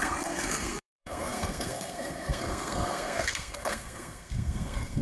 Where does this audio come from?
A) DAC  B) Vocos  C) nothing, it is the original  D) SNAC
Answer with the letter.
D